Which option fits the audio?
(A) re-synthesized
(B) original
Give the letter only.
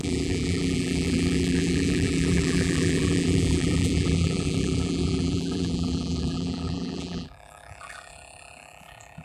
A